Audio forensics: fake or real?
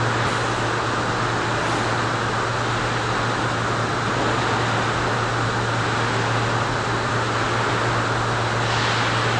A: real